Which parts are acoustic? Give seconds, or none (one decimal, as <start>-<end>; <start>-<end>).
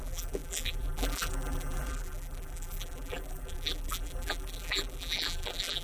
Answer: none